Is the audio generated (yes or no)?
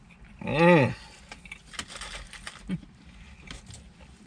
no